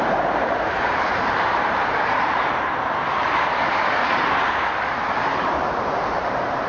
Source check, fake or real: fake